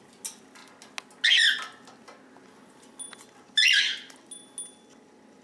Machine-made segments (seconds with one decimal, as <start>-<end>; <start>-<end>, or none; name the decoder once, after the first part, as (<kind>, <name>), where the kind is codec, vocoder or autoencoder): none

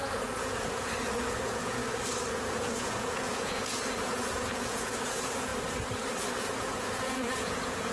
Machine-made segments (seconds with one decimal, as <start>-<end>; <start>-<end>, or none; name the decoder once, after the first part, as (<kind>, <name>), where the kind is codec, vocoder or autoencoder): 0.0-1.8 (vocoder, Vocos); 2.3-5.5; 6.3-7.9